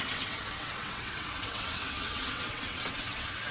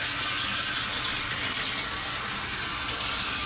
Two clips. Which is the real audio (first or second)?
second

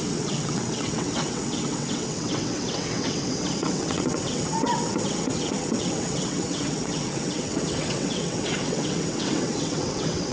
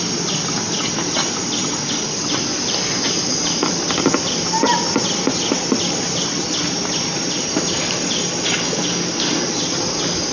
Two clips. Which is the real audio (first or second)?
second